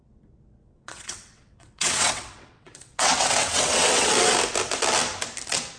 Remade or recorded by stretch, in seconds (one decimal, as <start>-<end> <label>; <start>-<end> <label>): 0.0-0.6 recorded; 0.6-4.1 remade; 4.1-5.8 recorded